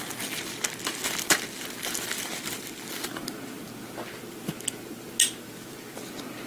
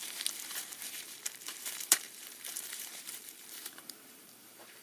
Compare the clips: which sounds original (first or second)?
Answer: first